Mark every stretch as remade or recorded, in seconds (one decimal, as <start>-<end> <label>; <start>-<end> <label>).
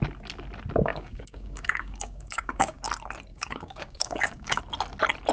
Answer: 0.0-0.9 recorded; 0.9-2.8 remade; 2.8-3.3 recorded; 3.3-4.6 remade; 4.6-5.3 recorded